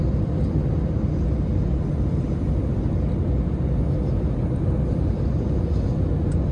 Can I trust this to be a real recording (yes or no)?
yes